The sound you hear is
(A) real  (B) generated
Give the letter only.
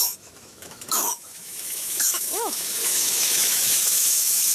B